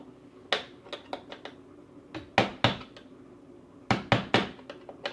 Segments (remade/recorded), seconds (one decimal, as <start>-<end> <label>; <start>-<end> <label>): 0.0-5.1 recorded